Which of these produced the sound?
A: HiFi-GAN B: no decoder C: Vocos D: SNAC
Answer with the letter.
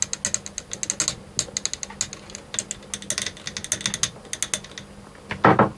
B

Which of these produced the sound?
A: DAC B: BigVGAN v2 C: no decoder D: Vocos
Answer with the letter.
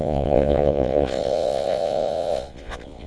D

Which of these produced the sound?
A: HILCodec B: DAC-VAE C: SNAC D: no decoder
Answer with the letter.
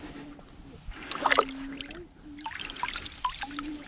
D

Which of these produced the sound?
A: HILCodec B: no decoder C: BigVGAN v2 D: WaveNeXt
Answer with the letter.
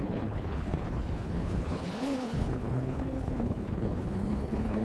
A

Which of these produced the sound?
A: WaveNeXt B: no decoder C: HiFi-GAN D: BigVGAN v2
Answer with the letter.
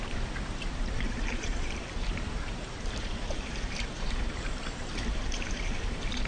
D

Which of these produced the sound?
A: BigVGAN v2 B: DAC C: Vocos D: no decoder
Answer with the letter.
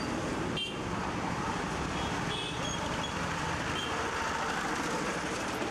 A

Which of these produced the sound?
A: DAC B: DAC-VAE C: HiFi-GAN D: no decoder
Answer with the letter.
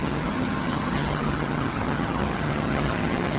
C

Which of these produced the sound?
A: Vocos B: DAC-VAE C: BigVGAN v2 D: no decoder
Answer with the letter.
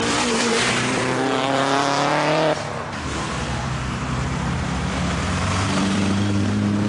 C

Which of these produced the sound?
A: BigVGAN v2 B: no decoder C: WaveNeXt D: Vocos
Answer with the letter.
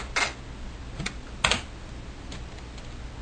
B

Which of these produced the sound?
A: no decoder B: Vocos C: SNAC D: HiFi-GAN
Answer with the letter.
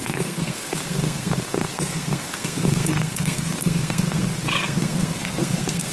C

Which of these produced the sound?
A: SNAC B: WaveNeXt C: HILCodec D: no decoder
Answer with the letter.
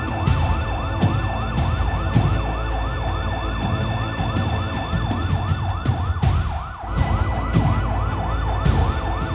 D